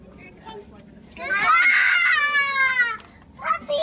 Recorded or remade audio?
recorded